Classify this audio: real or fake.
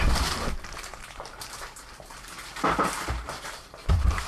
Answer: fake